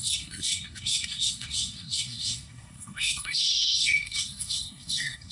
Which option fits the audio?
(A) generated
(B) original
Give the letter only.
A